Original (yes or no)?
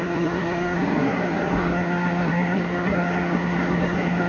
no